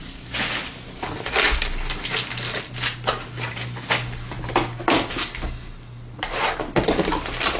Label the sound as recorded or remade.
recorded